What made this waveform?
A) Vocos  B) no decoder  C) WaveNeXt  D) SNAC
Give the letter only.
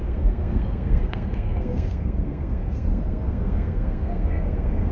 D